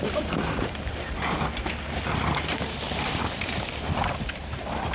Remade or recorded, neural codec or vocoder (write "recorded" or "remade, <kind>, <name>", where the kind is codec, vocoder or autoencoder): recorded